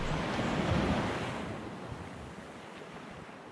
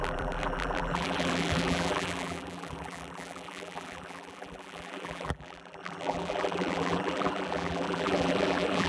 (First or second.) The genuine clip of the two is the first